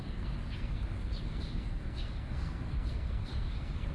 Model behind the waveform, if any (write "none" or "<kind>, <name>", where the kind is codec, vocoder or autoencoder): codec, SNAC